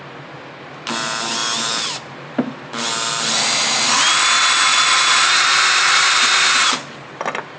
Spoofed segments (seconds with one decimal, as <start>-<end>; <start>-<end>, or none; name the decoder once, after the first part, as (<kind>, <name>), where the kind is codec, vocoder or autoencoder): 1.4-4.2 (vocoder, BigVGAN v2); 4.7-7.6